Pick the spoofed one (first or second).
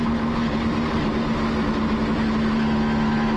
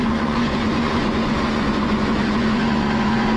second